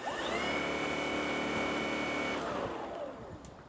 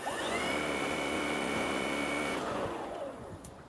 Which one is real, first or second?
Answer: first